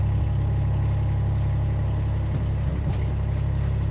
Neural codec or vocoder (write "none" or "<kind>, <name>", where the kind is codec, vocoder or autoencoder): none